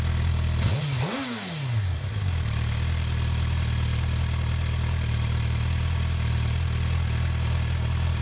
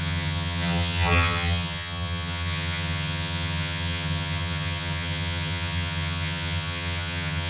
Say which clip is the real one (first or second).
first